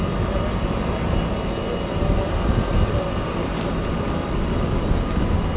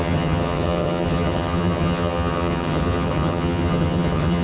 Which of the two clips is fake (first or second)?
second